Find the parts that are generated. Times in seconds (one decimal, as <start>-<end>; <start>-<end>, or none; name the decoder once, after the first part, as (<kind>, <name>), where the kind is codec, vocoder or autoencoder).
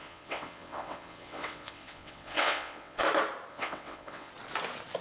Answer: 0.0-3.0 (vocoder, WaveNeXt); 3.5-4.3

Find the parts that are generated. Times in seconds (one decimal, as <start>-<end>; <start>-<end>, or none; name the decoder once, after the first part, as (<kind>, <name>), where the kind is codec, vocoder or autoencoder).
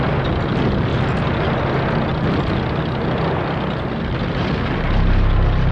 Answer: none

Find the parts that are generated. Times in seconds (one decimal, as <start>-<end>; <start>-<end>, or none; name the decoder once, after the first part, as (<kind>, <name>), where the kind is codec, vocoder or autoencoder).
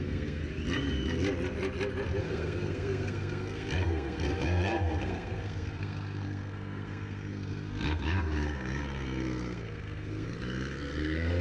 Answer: 0.0-0.4 (codec, SNAC); 2.2-11.4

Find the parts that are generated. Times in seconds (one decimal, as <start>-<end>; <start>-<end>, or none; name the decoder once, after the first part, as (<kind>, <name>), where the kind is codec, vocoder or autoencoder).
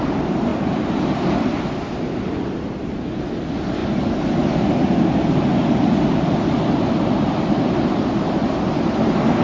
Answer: none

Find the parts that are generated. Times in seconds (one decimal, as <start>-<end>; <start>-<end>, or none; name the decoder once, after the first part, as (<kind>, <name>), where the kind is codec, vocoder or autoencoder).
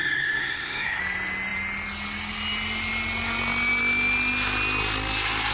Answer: 0.0-1.0 (codec, SNAC)